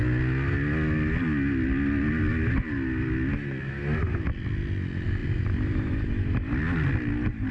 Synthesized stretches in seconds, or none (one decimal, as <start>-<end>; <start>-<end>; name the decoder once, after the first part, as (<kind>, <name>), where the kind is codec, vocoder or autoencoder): none